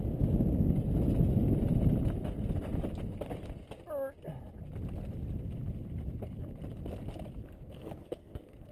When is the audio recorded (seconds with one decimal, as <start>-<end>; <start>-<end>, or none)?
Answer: 0.0-7.4